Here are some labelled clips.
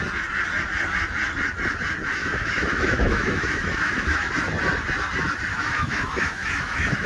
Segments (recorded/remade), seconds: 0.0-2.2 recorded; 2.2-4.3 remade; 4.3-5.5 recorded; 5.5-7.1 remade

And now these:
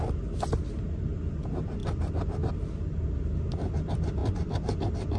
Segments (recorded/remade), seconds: 0.0-5.2 recorded